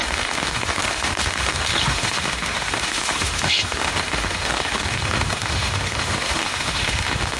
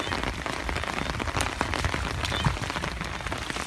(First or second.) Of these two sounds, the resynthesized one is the first